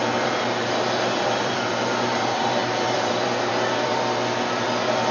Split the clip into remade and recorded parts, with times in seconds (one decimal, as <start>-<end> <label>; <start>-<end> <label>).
0.0-5.1 remade